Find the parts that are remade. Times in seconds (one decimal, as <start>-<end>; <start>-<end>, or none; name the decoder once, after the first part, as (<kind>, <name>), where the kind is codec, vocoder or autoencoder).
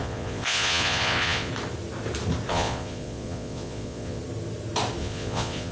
0.0-1.5 (vocoder, Vocos); 2.5-4.2; 5.0-5.7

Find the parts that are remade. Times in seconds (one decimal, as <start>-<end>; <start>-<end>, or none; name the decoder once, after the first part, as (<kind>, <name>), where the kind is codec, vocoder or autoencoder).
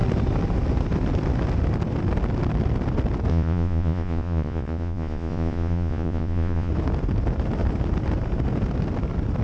3.3-6.7 (vocoder, Vocos)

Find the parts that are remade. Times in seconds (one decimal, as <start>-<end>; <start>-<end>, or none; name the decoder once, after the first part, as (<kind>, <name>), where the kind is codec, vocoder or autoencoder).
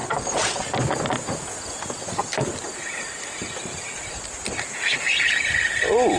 none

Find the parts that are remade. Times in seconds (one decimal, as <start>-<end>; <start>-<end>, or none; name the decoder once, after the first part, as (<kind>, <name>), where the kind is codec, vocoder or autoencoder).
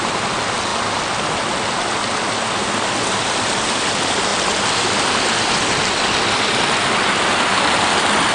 none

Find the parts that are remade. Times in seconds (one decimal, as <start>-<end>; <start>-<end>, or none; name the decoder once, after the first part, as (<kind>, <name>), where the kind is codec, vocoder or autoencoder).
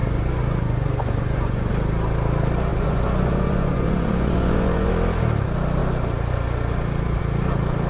0.0-1.7 (vocoder, Vocos); 2.7-4.9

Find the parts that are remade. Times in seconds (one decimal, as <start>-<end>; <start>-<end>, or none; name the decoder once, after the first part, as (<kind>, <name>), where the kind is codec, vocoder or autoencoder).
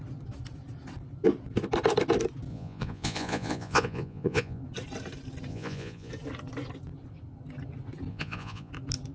2.5-4.6 (vocoder, Vocos); 5.5-6.1; 8.1-8.7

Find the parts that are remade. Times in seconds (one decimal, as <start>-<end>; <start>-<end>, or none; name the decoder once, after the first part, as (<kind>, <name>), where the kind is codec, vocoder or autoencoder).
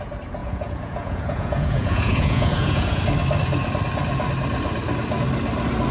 0.4-3.0 (vocoder, Vocos)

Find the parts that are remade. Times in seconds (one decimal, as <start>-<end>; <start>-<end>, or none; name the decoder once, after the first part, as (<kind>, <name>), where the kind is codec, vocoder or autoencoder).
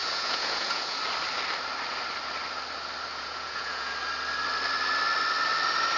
0.0-1.0 (vocoder, Vocos); 3.1-3.9